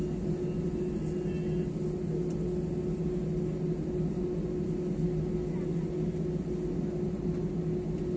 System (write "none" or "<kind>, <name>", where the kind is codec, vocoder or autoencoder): none